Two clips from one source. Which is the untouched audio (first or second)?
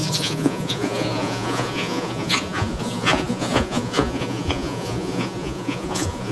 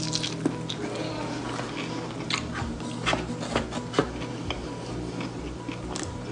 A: second